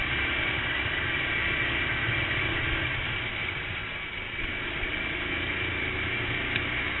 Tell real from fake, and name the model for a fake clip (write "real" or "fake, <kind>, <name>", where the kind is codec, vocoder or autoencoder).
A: real